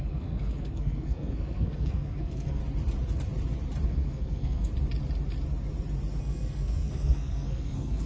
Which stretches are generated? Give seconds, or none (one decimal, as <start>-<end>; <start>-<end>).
0.0-2.6; 3.9-4.7; 6.2-8.1